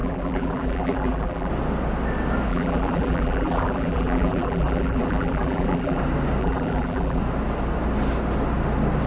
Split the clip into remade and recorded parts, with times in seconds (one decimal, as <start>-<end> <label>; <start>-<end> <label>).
0.0-1.5 remade; 1.5-2.5 recorded; 2.5-6.0 remade; 6.0-6.4 recorded; 6.4-7.2 remade; 7.2-9.1 recorded